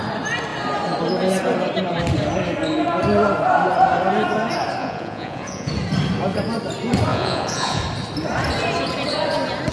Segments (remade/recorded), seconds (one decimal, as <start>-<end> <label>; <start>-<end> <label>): 0.0-4.8 recorded; 4.8-5.7 remade; 5.7-7.1 recorded; 7.1-7.8 remade; 7.8-9.7 recorded